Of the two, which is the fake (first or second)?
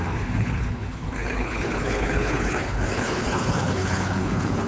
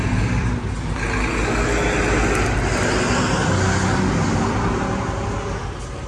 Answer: first